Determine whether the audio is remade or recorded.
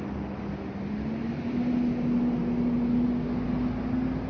recorded